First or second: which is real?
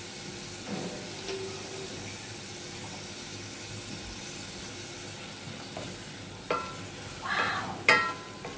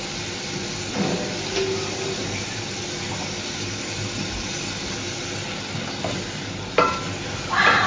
first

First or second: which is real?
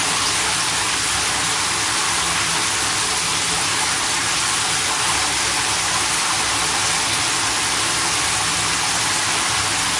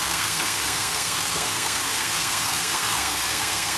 first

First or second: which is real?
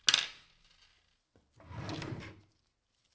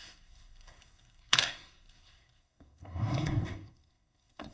first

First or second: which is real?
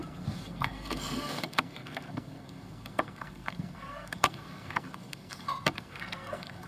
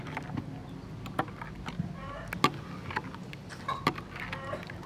second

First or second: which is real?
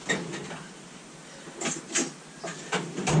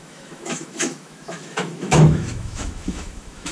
first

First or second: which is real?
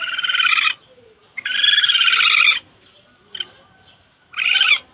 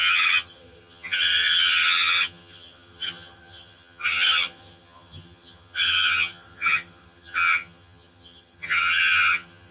first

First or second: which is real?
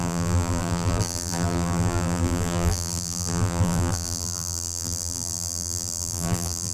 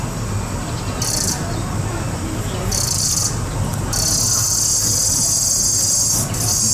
second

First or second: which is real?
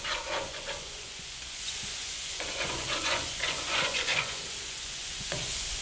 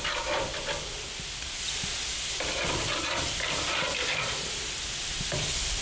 second